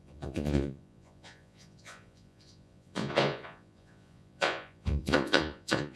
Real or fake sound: fake